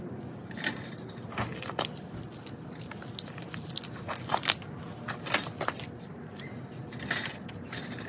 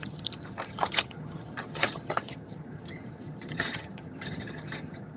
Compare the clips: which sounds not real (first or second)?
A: second